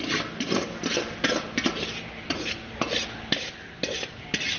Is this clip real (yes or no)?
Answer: yes